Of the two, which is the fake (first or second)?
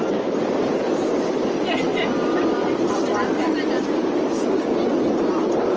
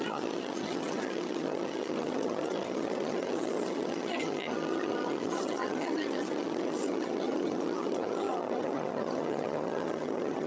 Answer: second